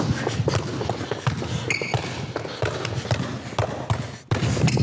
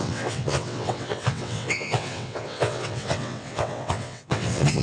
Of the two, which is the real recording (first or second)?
first